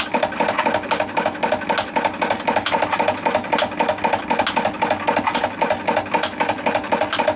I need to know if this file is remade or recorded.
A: recorded